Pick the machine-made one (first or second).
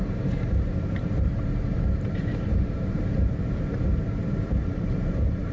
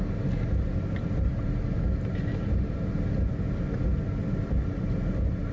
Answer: first